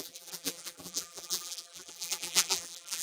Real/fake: fake